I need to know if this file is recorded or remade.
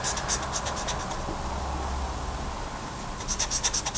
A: recorded